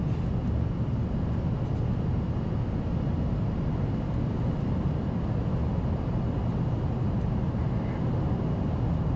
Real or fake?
real